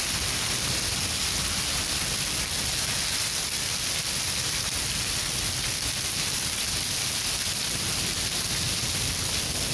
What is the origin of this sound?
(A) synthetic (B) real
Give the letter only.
B